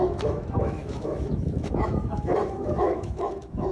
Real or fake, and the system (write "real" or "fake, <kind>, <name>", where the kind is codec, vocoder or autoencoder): fake, autoencoder, DAC-VAE